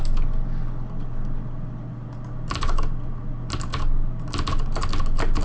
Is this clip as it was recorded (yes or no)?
yes